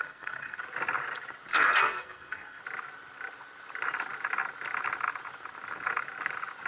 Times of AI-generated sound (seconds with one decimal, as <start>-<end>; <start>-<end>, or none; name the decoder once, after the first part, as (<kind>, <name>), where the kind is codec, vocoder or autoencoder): 0.0-0.6 (codec, SNAC); 1.5-2.6